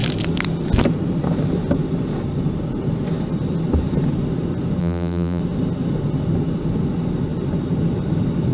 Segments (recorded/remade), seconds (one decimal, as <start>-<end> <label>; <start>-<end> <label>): 0.0-4.8 recorded; 4.8-5.4 remade; 5.4-8.5 recorded